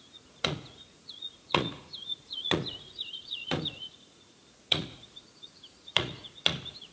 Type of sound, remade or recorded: remade